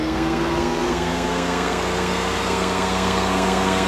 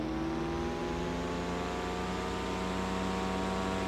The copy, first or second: first